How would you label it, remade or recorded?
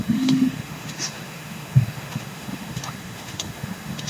remade